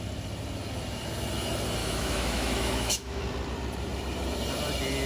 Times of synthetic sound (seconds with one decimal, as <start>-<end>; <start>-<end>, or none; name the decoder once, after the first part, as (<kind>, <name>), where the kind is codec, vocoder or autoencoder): 1.8-3.2 (autoencoder, DAC-VAE)